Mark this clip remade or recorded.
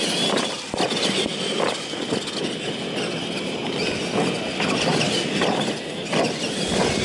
recorded